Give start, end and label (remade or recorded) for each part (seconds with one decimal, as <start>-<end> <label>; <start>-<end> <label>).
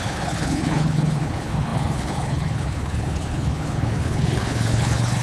0.0-5.2 remade